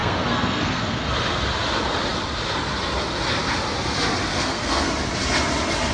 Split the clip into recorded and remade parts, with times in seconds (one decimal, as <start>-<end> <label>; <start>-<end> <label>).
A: 0.0-1.1 remade; 1.1-4.3 recorded; 4.3-4.9 remade; 4.9-5.9 recorded